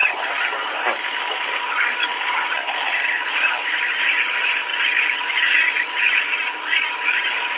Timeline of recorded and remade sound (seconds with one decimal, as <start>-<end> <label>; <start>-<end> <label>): 0.0-4.0 recorded; 4.0-4.7 remade; 4.7-6.9 recorded; 6.9-7.6 remade